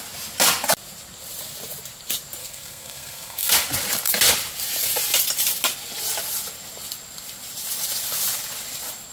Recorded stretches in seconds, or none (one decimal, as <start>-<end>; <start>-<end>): 0.0-2.4; 3.5-9.1